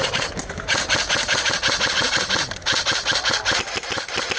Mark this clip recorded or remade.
recorded